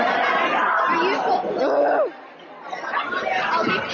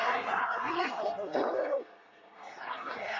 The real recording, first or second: first